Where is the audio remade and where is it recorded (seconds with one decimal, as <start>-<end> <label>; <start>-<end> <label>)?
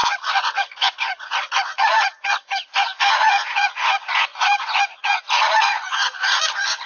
0.0-6.9 remade